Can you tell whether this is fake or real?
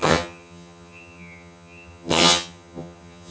fake